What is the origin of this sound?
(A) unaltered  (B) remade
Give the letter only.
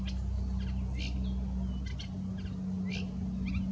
A